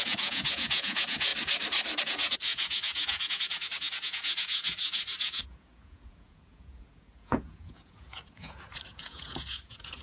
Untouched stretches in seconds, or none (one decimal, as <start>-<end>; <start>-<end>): 1.3-2.0